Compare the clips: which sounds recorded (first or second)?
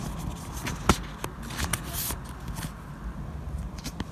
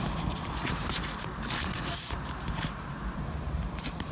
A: first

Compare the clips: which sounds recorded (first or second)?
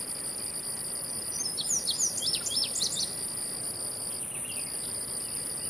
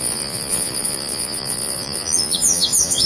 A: first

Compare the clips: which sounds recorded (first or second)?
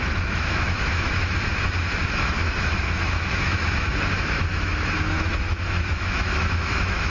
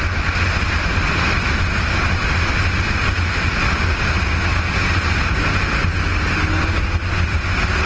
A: second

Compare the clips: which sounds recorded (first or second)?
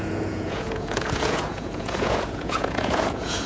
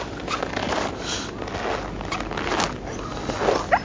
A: second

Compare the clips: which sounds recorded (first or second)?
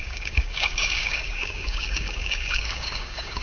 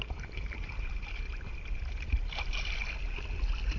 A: second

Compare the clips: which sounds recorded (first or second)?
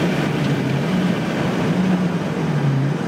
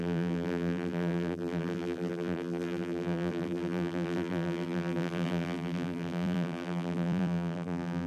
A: first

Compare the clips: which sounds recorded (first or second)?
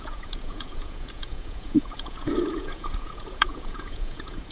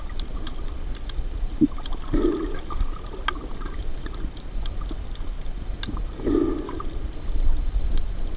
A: second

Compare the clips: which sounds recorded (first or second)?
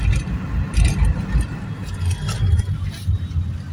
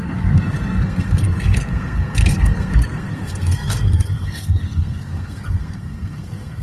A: first